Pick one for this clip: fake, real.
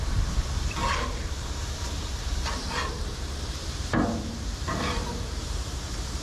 fake